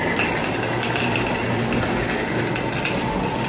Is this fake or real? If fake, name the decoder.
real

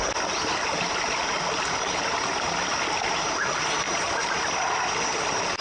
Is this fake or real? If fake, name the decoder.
real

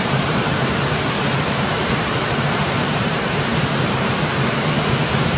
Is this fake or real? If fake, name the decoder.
fake, vocoder, BigVGAN v2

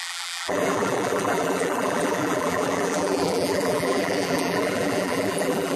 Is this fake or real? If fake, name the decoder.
fake, vocoder, BigVGAN v2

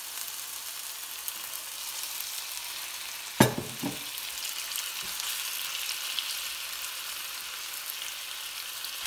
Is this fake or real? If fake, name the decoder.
real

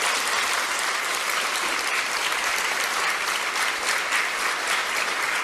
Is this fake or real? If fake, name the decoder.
real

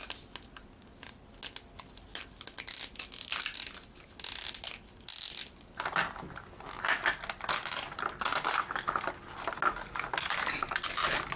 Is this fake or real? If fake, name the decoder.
real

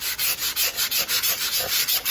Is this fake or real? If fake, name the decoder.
real